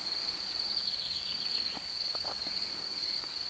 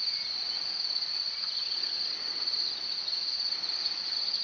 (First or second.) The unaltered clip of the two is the second